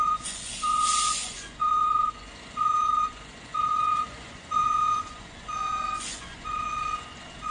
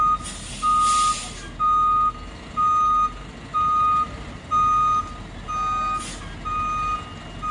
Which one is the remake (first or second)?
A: first